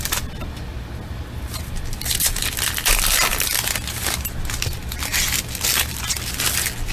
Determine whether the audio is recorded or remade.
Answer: recorded